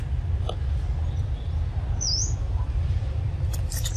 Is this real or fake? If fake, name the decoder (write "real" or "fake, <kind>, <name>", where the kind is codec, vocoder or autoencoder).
real